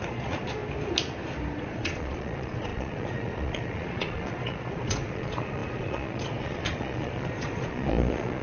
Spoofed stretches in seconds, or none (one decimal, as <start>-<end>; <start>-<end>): 0.0-0.6; 1.6-8.4